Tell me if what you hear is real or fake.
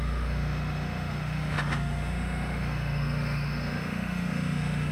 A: fake